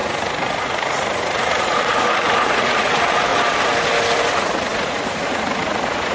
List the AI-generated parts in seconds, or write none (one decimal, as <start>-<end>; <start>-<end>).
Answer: 0.0-3.3; 4.3-6.1